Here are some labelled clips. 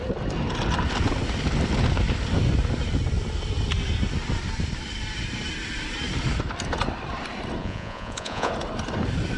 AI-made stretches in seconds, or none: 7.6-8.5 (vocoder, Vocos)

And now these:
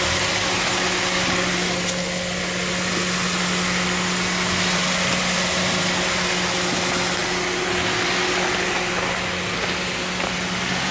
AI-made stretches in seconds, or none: none

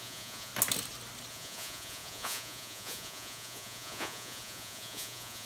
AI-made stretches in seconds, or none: 0.0-0.5 (vocoder, Vocos); 1.3-5.5

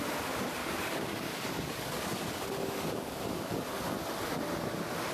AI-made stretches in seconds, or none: 0.6-3.6 (codec, DAC)

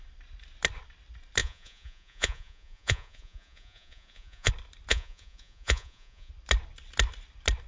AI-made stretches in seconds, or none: 1.4-4.5 (vocoder, Vocos); 4.9-6.3